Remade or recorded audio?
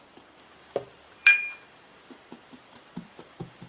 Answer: remade